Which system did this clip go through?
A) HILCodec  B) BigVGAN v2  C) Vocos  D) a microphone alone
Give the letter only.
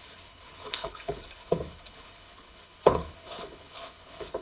A